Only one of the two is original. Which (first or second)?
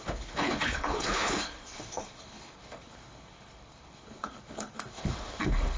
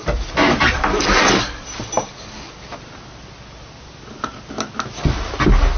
second